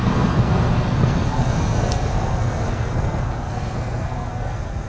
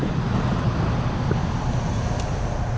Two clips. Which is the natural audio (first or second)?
second